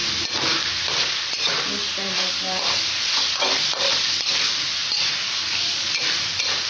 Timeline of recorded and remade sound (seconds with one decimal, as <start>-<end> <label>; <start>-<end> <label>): 0.0-6.7 recorded